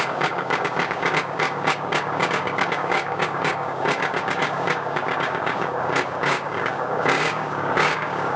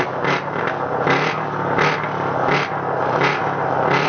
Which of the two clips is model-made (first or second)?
first